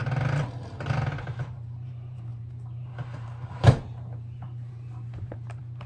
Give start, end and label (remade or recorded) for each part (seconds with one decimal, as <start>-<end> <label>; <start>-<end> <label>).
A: 0.0-1.2 recorded; 1.2-5.9 remade